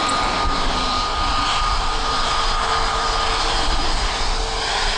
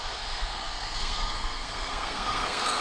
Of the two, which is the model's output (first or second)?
second